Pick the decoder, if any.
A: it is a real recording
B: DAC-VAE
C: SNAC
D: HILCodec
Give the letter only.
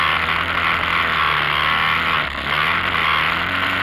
A